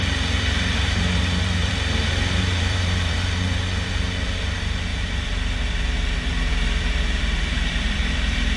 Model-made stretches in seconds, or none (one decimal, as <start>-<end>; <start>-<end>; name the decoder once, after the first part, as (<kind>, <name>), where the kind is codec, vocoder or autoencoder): 0.0-8.6 (vocoder, BigVGAN v2)